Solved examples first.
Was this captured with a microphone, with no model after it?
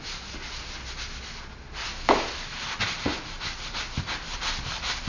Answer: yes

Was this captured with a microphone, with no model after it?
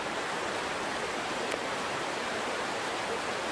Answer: yes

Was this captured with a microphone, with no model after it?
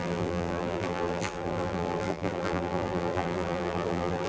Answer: no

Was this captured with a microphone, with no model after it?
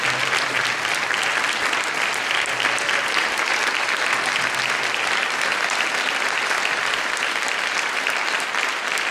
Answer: yes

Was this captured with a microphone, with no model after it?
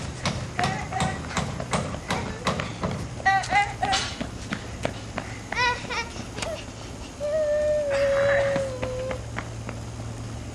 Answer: yes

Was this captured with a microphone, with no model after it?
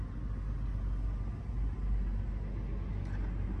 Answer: yes